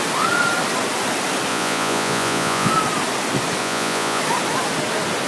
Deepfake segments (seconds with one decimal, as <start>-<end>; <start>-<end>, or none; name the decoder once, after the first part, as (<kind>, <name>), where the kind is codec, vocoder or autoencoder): 1.5-2.7 (vocoder, Vocos); 3.6-4.2